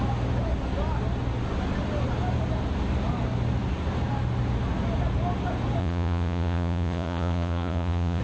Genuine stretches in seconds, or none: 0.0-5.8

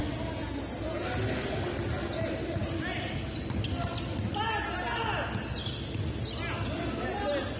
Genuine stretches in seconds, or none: 0.0-7.6

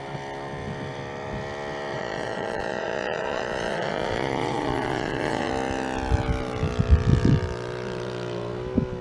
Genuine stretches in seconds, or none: 0.0-1.9; 5.5-9.0

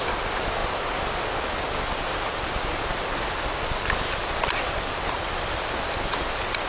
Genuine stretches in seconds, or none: 0.0-6.7

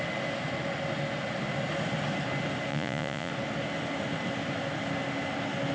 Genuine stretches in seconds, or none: 0.0-2.7; 3.3-5.7